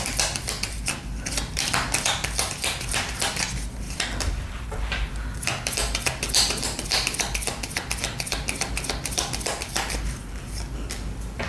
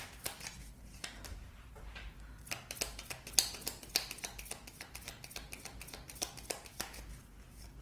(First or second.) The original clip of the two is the second